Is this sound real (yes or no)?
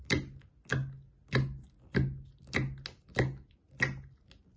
yes